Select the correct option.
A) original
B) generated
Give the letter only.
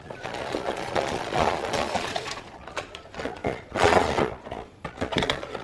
B